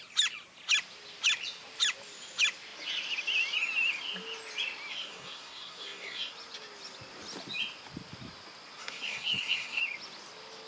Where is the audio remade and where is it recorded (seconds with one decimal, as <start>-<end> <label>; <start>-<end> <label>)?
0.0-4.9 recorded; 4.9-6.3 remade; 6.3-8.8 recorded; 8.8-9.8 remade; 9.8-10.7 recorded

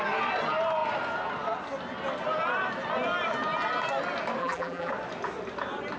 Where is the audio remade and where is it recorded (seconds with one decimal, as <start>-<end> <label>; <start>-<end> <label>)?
0.0-4.4 recorded; 4.4-4.9 remade; 4.9-6.0 recorded

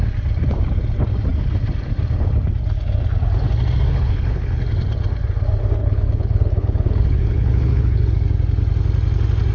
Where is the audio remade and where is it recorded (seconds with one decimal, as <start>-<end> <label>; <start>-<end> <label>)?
0.0-3.9 recorded; 3.9-4.6 remade; 4.6-5.8 recorded; 5.8-8.1 remade; 8.1-9.5 recorded

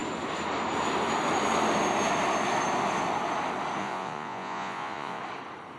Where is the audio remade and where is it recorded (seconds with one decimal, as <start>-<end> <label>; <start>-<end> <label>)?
0.0-3.8 recorded; 3.8-5.2 remade; 5.2-5.8 recorded

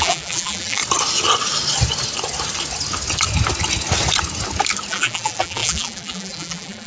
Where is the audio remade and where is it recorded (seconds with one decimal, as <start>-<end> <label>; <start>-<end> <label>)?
0.0-0.8 remade; 0.8-4.9 recorded; 4.9-6.9 remade

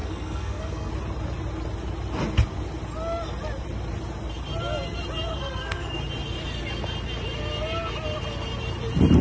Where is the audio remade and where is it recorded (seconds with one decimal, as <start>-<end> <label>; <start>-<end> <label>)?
0.0-0.9 remade; 0.9-5.3 recorded; 5.3-6.0 remade; 6.0-9.2 recorded

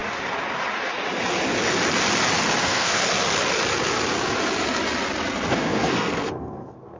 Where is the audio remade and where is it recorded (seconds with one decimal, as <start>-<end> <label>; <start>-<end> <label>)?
0.0-2.6 recorded; 2.6-3.0 remade; 3.0-5.5 recorded; 5.5-7.0 remade